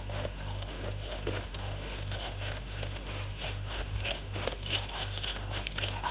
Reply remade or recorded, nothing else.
remade